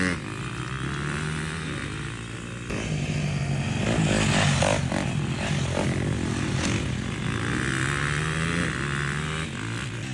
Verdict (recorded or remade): recorded